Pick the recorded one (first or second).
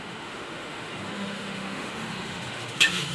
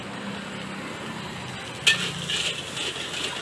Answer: second